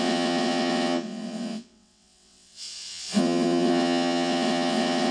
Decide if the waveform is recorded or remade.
remade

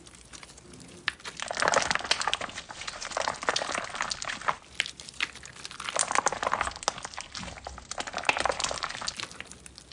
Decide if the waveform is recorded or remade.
recorded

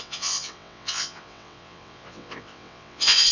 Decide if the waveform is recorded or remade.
remade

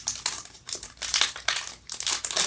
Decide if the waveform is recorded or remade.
recorded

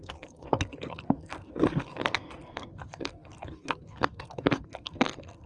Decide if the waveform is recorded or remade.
remade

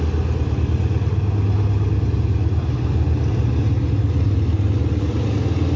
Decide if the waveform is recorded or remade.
recorded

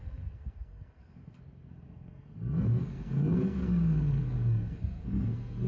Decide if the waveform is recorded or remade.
remade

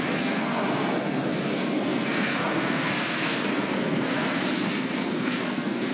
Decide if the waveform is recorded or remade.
remade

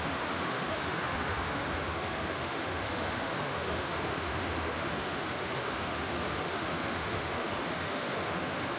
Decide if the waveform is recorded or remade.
remade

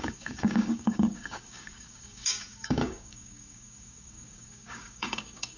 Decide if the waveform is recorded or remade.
remade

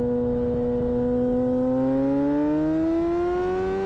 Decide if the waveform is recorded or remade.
recorded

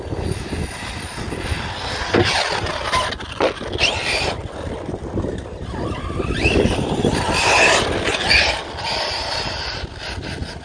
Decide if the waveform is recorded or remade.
recorded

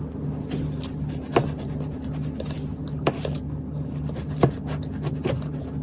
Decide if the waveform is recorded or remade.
recorded